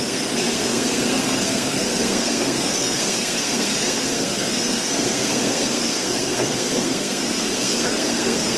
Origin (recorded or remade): remade